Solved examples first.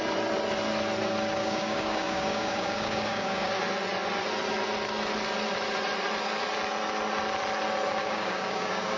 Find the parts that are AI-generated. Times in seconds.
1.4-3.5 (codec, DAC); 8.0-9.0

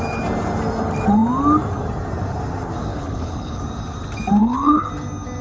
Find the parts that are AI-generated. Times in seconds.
2.9-3.6 (codec, HILCodec); 4.4-4.9